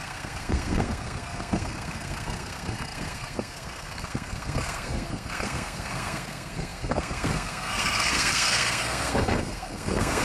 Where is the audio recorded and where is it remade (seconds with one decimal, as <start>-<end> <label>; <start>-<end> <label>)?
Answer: 0.0-10.2 remade